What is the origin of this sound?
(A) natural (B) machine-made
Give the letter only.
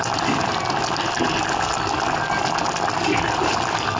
A